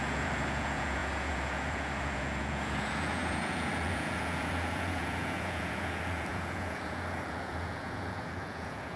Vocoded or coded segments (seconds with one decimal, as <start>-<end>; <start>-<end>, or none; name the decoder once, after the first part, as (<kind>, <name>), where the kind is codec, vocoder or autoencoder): 0.0-9.0 (vocoder, Vocos)